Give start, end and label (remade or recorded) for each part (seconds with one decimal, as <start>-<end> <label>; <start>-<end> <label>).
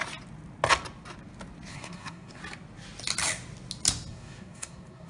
0.0-1.7 recorded; 1.7-2.4 remade; 2.4-4.1 recorded; 4.1-5.1 remade